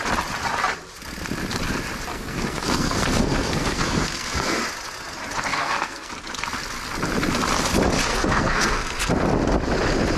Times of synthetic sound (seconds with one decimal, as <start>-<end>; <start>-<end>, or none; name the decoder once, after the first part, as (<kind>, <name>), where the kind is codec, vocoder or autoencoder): 2.1-4.6 (codec, SNAC); 5.5-6.1; 8.1-9.1